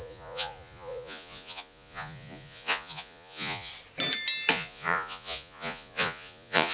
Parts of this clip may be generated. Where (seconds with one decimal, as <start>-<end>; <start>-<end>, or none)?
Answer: 0.0-3.7; 4.5-6.7